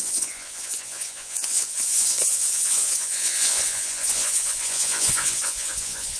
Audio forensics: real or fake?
fake